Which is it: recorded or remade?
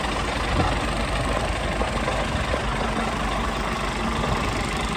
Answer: recorded